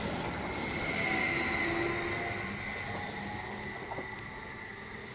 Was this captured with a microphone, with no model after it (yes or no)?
yes